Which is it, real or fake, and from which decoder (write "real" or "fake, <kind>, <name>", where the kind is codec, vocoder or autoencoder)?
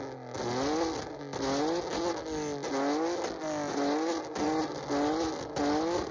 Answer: real